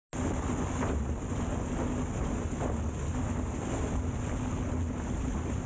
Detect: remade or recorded recorded